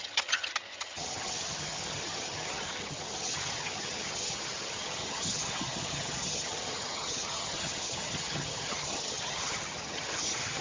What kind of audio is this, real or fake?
fake